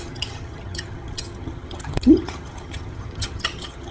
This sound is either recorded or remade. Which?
remade